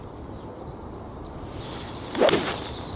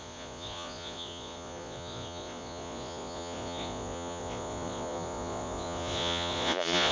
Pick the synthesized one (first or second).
second